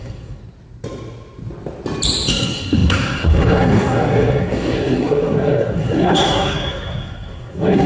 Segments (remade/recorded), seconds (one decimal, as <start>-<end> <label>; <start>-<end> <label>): 0.0-0.4 remade; 0.4-2.3 recorded; 2.3-7.9 remade

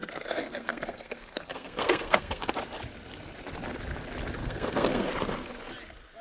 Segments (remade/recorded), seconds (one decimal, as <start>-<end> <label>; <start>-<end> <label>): 0.0-2.5 remade; 2.5-4.4 recorded; 4.4-5.1 remade; 5.1-6.2 recorded

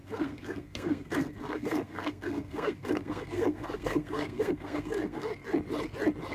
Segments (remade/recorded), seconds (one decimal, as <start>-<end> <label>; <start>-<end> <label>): 0.0-5.3 remade; 5.3-6.3 recorded

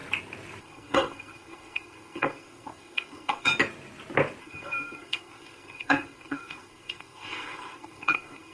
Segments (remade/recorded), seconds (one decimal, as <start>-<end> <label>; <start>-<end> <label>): 0.0-0.6 recorded; 0.6-3.5 remade; 3.5-4.4 recorded; 4.4-8.5 remade

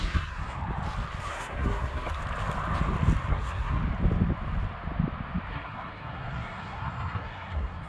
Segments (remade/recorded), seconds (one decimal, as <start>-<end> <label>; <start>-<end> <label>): 0.0-0.6 remade; 0.6-1.2 recorded; 1.2-2.2 remade; 2.2-3.3 recorded; 3.3-3.8 remade; 3.8-5.5 recorded; 5.5-7.9 remade

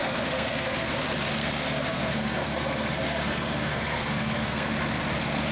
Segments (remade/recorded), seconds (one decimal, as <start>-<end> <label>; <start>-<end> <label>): 0.0-0.9 remade; 0.9-1.4 recorded; 1.4-4.7 remade; 4.7-5.5 recorded

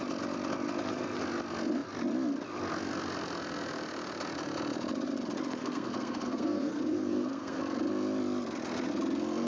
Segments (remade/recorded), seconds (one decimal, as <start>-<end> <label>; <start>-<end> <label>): 0.0-5.6 recorded; 5.6-7.6 remade; 7.6-9.5 recorded